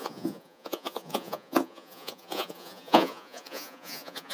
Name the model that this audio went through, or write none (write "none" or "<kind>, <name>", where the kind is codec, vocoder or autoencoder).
vocoder, Vocos